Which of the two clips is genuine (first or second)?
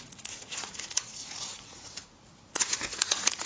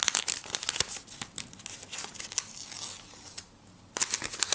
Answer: second